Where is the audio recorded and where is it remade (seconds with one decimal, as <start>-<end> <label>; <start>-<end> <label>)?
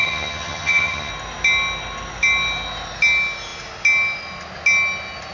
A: 0.0-1.1 remade; 1.1-5.3 recorded